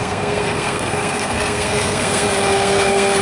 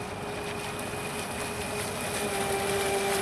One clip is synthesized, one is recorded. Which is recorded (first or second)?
second